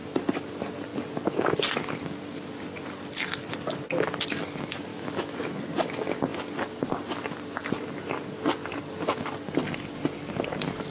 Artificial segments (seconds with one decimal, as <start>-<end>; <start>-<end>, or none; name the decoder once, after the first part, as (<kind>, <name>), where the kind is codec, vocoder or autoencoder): 4.9-5.6 (autoencoder, DAC-VAE)